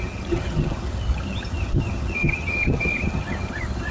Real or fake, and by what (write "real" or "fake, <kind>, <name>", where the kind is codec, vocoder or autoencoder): fake, vocoder, HiFi-GAN